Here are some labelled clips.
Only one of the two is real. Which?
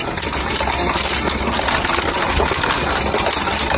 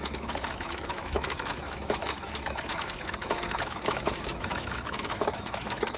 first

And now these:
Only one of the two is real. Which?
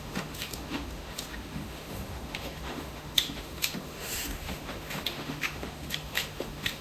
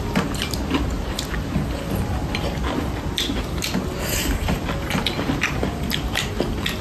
second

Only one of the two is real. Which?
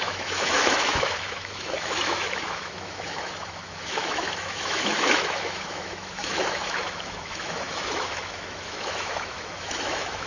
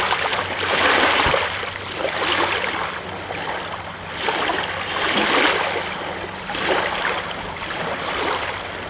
second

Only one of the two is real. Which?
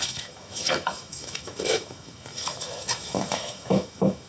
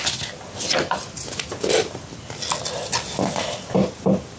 second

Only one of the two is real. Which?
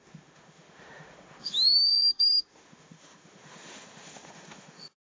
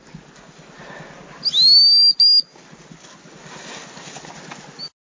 second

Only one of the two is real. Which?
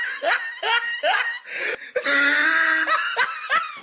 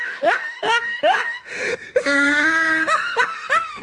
first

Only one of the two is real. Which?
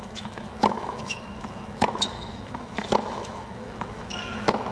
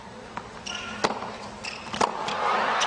second